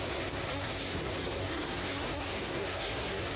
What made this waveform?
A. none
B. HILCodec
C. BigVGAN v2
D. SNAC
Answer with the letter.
D